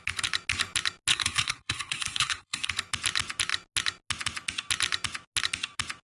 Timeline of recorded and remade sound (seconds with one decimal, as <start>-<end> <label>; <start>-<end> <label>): 0.0-1.1 recorded; 1.1-2.7 remade; 2.7-6.1 recorded